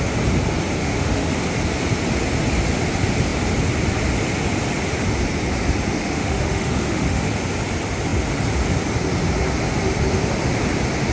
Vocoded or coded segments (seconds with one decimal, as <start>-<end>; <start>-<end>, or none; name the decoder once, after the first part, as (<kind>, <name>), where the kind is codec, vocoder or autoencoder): 0.8-1.4 (autoencoder, DAC-VAE); 6.0-7.3